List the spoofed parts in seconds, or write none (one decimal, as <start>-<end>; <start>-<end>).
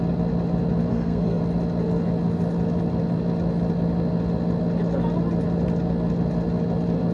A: 0.9-1.4